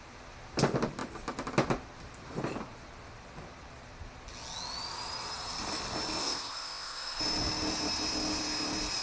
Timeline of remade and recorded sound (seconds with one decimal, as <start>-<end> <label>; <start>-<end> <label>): 0.0-6.2 recorded; 6.2-7.2 remade; 7.2-9.0 recorded

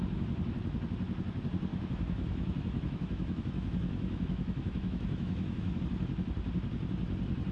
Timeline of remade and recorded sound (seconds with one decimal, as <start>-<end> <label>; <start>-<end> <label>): 0.0-1.7 recorded; 1.7-5.8 remade; 5.8-7.5 recorded

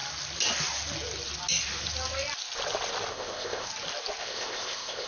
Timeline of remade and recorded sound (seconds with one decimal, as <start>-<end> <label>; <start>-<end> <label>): 0.0-3.1 recorded; 3.1-3.7 remade; 3.7-4.2 recorded; 4.2-5.1 remade

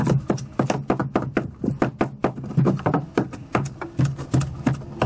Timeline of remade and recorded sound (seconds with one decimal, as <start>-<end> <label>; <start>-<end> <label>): 0.0-5.1 recorded